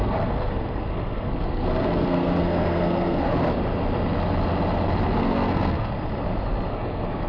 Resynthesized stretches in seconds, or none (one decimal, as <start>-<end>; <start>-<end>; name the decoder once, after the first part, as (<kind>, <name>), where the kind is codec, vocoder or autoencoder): 0.0-3.3 (codec, SNAC); 5.2-6.1; 6.7-7.3